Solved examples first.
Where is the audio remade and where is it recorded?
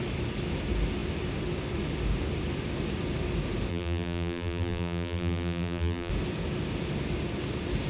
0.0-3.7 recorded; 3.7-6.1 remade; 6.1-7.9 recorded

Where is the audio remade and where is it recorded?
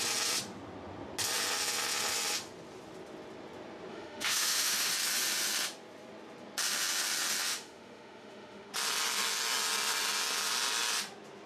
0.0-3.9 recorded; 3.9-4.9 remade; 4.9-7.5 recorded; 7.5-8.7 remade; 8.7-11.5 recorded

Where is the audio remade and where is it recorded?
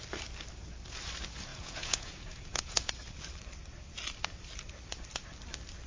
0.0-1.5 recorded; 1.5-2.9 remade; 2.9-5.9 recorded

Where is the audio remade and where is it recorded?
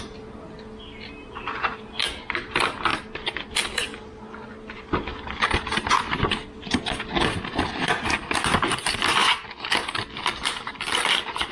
0.0-11.5 recorded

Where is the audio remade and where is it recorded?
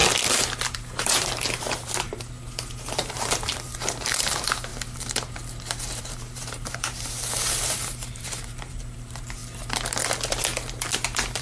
0.0-0.5 recorded; 0.5-4.7 remade; 4.7-5.6 recorded; 5.6-9.4 remade; 9.4-11.4 recorded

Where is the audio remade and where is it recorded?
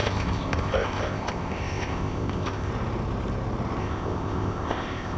0.0-2.7 remade; 2.7-3.8 recorded; 3.8-5.2 remade